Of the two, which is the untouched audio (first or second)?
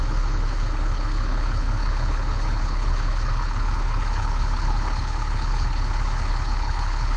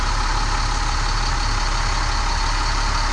second